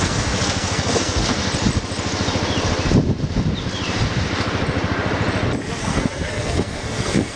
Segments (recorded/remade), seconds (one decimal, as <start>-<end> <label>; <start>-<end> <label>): 0.0-1.4 remade; 1.4-5.8 recorded; 5.8-7.4 remade